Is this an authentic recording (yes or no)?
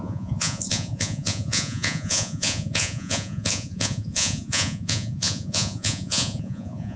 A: no